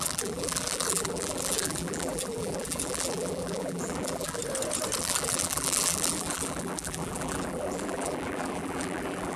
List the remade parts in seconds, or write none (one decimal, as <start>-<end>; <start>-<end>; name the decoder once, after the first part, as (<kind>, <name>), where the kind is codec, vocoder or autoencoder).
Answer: 0.0-4.4 (vocoder, BigVGAN v2); 5.0-9.4

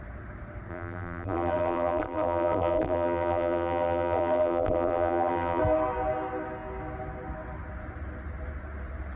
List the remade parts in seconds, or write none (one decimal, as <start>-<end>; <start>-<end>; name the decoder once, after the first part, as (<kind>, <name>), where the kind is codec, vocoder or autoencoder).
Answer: 0.7-5.6 (vocoder, BigVGAN v2)